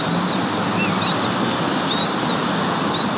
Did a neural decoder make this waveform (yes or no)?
no